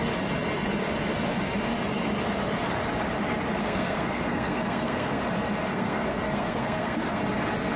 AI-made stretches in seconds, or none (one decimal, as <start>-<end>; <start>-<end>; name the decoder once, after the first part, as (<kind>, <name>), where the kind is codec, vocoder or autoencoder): 3.6-5.2 (codec, SNAC); 5.7-7.2